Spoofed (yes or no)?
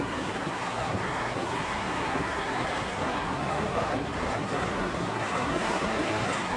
yes